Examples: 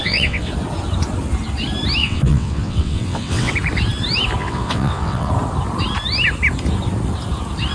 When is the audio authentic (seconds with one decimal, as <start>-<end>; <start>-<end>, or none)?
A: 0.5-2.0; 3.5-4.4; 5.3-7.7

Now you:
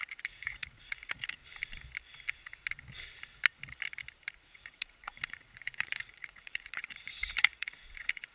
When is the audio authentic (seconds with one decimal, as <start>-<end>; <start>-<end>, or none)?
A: 1.4-4.4

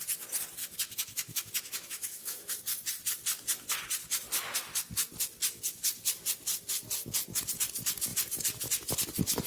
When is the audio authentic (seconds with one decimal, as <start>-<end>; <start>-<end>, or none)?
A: 0.0-0.6; 2.6-9.5